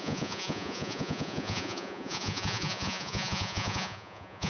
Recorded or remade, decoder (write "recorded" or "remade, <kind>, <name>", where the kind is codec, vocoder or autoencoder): remade, vocoder, Vocos